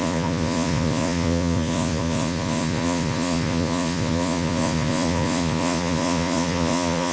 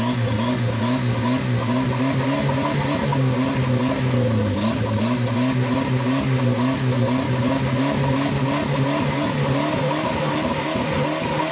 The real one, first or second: second